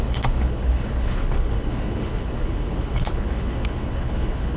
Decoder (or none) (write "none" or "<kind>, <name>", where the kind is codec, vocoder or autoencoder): codec, HILCodec